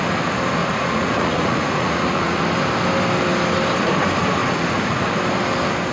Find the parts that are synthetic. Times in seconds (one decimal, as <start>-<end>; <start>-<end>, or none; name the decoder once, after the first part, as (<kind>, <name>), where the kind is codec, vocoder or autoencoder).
0.6-2.4 (vocoder, Vocos); 4.4-5.1